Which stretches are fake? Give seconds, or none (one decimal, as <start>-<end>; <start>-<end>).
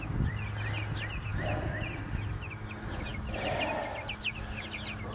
none